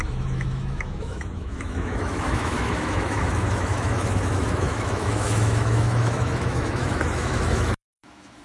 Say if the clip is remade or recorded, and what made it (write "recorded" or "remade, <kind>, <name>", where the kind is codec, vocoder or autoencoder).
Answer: remade, autoencoder, DAC-VAE